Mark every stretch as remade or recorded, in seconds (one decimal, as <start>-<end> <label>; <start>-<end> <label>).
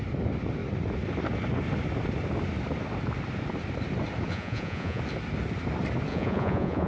0.0-4.3 recorded; 4.3-5.0 remade; 5.0-6.1 recorded; 6.1-6.9 remade